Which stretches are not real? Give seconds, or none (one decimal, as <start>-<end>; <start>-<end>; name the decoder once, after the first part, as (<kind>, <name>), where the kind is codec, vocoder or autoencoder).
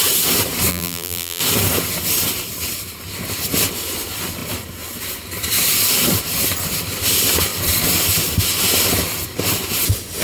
0.7-1.4 (vocoder, BigVGAN v2)